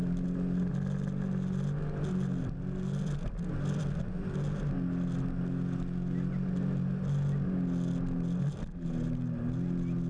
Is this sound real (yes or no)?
yes